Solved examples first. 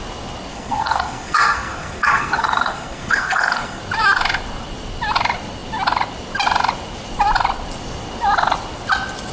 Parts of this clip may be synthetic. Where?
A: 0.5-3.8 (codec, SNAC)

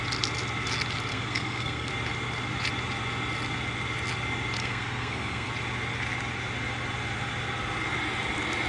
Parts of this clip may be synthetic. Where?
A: 1.1-1.9 (codec, SNAC); 4.6-5.5

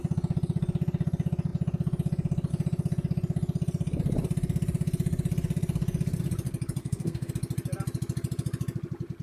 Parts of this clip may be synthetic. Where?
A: 6.8-7.3 (codec, SNAC)

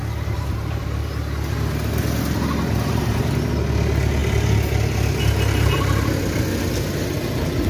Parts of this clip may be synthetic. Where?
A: none

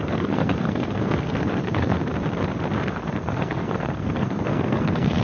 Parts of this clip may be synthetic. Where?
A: 0.0-2.0 (codec, SNAC); 2.9-5.2

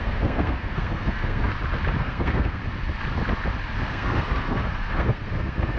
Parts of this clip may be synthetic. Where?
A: 0.0-1.5 (codec, SNAC); 2.0-2.6; 3.9-5.8

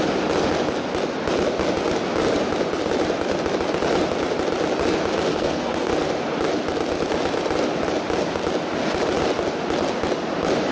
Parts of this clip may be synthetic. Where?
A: 5.3-5.9 (codec, SNAC)